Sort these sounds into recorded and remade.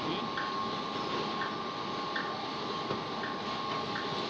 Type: recorded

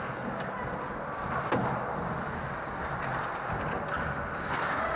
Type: recorded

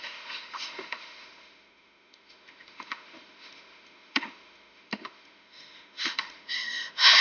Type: remade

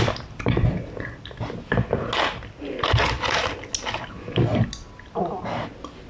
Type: recorded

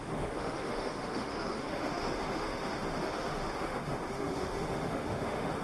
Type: remade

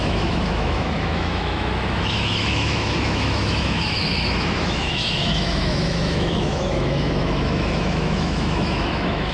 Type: remade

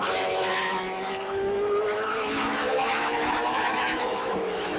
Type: remade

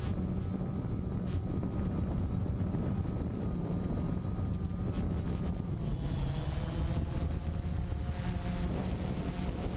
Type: recorded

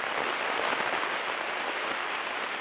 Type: recorded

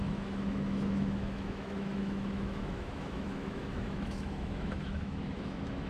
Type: remade